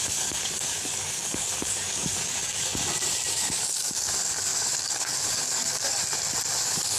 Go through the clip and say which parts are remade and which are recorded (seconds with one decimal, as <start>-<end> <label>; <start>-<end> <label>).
0.0-2.7 remade; 2.7-3.3 recorded; 3.3-6.0 remade; 6.0-6.6 recorded; 6.6-7.0 remade